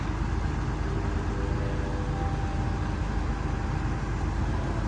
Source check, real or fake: real